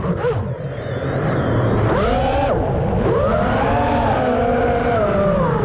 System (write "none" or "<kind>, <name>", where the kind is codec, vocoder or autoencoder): none